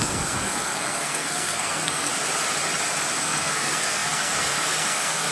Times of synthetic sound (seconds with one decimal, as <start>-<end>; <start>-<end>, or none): 0.0-2.1; 3.2-5.3

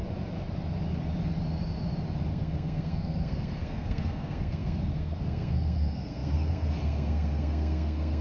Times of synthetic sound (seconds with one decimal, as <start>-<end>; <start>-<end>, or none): 2.3-8.2

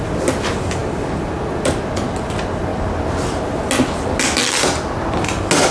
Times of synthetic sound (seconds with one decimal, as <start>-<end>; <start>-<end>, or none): none

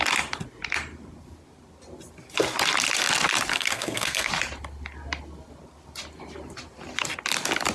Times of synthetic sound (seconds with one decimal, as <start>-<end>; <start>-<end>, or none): 3.5-4.3

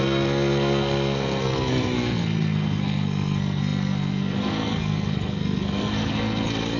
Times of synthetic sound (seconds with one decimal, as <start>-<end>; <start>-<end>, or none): 0.0-6.8

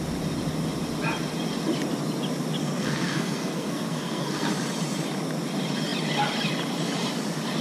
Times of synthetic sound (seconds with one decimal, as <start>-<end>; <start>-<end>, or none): 2.6-4.5